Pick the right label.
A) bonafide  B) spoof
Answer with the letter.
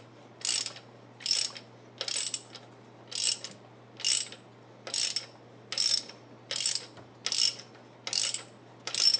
A